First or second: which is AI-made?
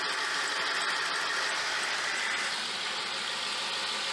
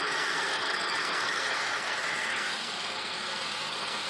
second